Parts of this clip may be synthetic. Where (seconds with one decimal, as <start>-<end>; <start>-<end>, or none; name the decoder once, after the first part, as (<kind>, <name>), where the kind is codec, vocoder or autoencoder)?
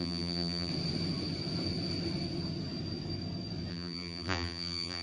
0.0-0.7 (vocoder, BigVGAN v2); 3.7-5.0